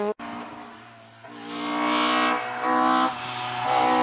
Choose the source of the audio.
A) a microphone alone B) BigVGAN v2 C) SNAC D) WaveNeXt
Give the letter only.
A